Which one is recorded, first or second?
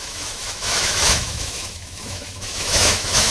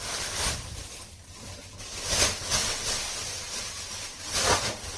second